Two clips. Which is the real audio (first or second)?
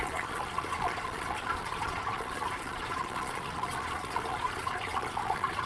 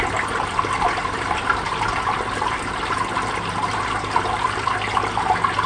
second